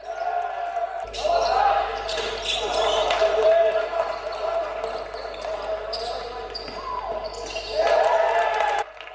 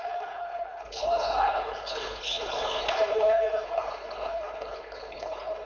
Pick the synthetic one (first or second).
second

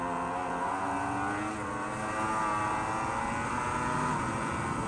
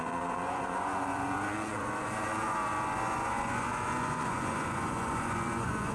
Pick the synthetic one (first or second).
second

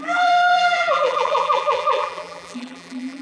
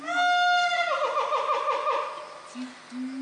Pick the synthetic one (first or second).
first